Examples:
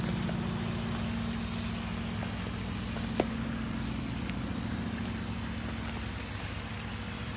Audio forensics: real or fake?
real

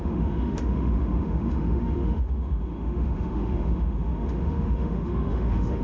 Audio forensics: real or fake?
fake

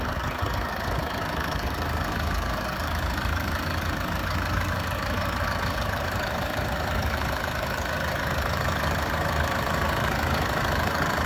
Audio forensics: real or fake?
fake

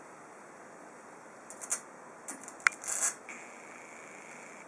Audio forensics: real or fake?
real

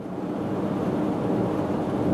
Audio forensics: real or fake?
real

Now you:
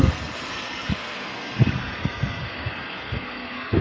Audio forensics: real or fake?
fake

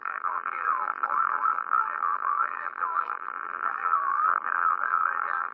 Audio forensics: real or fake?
fake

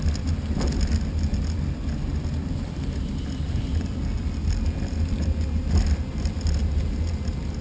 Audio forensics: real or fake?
real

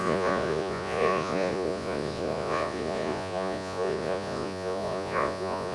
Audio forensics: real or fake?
fake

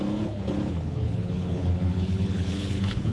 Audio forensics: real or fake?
fake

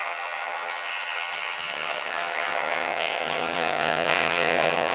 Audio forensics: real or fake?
fake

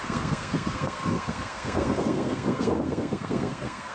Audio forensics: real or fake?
fake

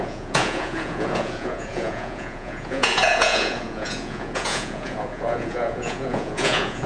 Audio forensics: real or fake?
fake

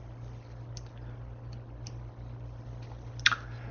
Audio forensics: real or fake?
real